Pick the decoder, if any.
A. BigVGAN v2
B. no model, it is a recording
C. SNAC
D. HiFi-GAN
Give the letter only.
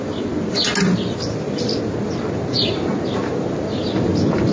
B